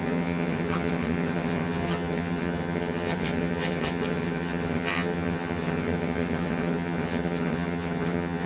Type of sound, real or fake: fake